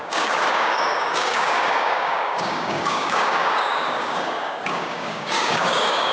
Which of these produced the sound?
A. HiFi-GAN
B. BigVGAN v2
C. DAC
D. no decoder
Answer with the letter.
C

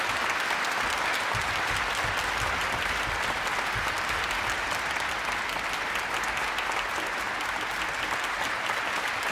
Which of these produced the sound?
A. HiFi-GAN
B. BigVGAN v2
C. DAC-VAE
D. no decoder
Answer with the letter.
D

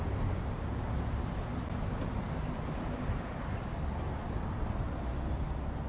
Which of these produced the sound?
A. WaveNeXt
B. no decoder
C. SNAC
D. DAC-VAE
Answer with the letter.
B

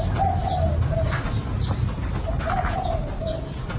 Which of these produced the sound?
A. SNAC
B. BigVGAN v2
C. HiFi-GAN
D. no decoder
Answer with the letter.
D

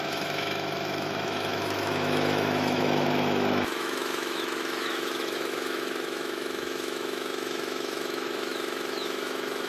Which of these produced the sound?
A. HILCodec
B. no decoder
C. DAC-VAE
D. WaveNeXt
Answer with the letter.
C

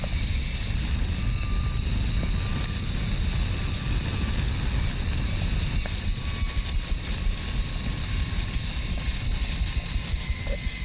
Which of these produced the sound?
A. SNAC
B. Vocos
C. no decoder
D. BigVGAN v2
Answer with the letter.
C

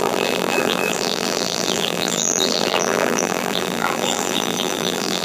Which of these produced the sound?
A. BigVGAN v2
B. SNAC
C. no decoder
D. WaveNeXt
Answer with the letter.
A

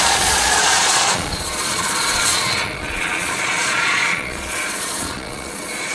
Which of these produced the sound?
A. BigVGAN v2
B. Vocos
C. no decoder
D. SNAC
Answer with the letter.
B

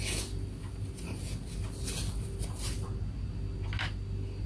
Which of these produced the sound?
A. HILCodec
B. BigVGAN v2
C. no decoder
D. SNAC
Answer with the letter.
C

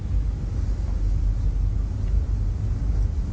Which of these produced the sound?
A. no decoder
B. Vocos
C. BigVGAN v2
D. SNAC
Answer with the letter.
A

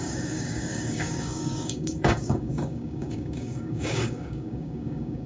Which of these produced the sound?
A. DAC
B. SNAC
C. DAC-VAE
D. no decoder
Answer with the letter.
A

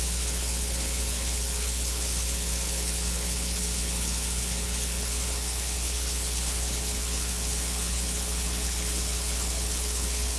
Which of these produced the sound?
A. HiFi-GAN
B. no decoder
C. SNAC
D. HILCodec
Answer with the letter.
D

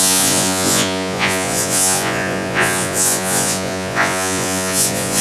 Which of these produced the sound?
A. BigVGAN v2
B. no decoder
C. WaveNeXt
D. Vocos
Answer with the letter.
D